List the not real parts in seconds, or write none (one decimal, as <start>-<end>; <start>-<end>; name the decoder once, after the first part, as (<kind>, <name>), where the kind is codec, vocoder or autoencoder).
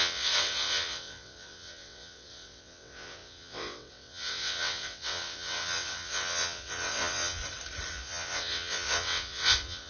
0.0-7.4 (vocoder, WaveNeXt); 7.9-9.9